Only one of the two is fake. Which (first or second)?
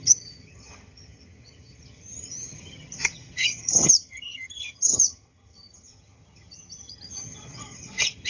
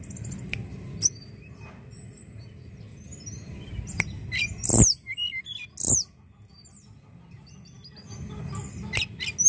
first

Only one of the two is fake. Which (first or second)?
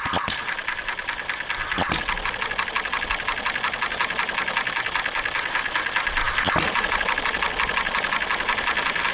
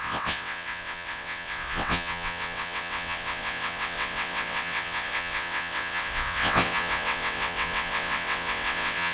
second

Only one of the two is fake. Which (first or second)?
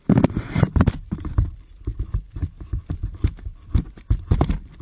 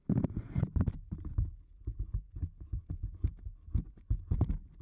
first